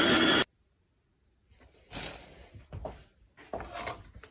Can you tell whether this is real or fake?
real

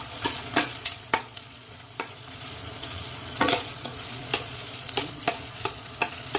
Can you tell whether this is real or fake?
fake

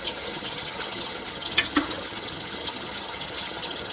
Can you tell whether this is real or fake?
fake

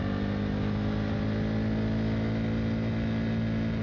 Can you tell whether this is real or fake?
real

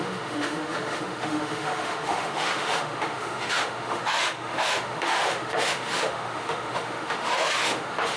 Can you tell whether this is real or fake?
fake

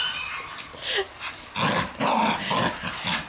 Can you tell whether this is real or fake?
real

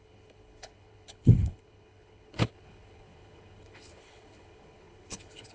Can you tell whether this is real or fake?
fake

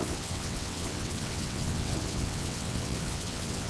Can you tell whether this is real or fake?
fake